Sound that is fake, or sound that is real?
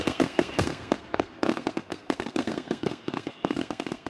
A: fake